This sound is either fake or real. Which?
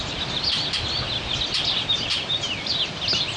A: real